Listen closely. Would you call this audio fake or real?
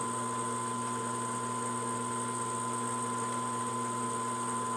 real